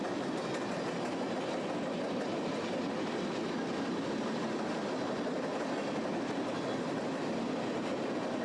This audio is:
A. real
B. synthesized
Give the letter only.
A